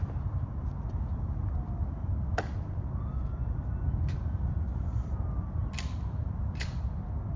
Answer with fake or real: real